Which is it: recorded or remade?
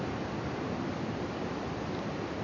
recorded